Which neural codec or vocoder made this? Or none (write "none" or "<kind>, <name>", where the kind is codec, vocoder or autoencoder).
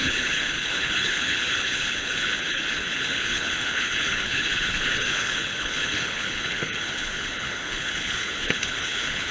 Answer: codec, HILCodec